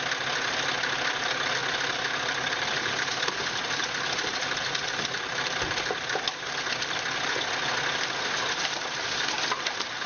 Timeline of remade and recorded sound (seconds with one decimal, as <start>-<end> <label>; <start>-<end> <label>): 0.0-10.1 recorded